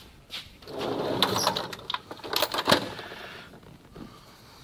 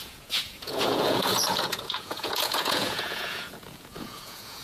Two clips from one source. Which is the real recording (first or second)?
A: first